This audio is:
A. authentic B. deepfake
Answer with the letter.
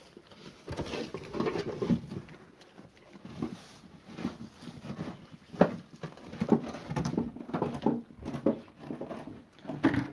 A